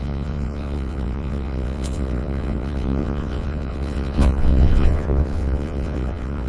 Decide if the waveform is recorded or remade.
remade